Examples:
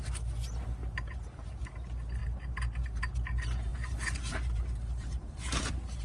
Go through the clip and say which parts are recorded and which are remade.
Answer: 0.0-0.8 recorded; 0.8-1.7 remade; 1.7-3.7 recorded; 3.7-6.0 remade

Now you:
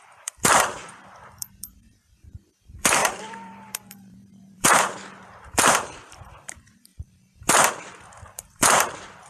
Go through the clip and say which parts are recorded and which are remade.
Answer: 0.0-9.3 remade

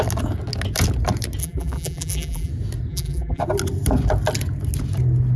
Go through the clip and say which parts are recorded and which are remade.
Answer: 0.0-1.4 recorded; 1.4-2.5 remade; 2.5-2.9 recorded; 2.9-3.4 remade; 3.4-5.4 recorded

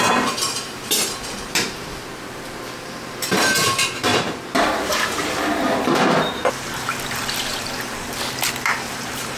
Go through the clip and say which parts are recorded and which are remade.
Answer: 0.0-9.4 remade

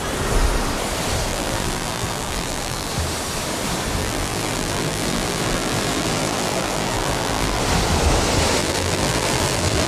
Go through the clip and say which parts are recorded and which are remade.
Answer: 0.0-1.3 recorded; 1.3-2.9 remade; 2.9-4.0 recorded; 4.0-7.6 remade; 7.6-8.6 recorded; 8.6-9.9 remade